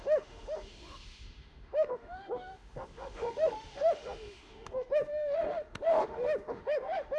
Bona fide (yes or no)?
no